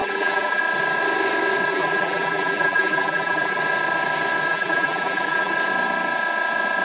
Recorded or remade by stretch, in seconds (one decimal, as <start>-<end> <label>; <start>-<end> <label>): 0.0-0.6 remade; 0.6-1.7 recorded; 1.7-3.6 remade; 3.6-4.5 recorded; 4.5-5.5 remade; 5.5-6.8 recorded